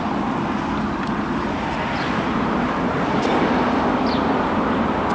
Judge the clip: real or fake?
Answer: fake